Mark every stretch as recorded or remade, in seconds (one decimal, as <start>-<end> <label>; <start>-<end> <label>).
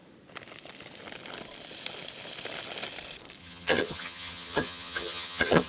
0.0-3.4 recorded; 3.4-5.7 remade